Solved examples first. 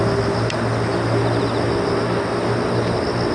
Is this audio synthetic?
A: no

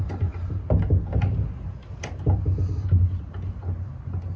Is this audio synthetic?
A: no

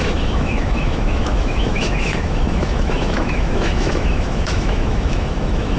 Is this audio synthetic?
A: yes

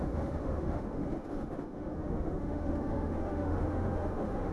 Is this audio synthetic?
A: yes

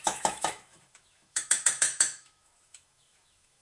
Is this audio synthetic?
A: yes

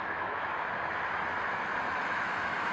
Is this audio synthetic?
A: yes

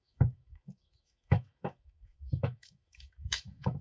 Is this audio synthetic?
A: yes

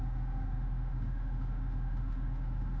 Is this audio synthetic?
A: yes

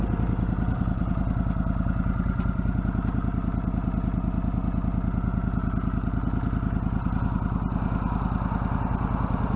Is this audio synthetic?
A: no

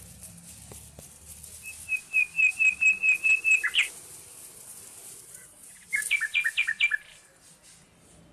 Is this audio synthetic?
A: no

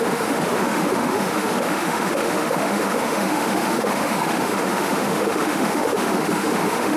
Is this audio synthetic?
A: yes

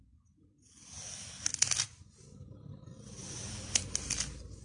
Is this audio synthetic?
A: no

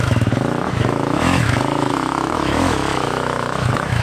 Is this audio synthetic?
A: yes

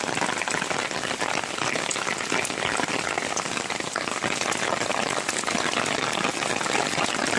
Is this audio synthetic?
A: no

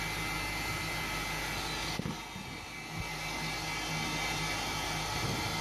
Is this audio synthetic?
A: no